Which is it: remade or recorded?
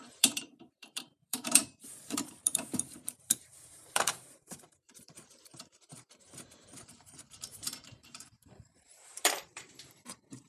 remade